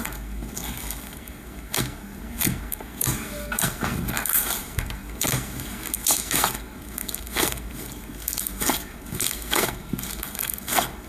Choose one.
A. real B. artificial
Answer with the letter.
B